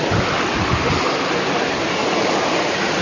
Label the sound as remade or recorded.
recorded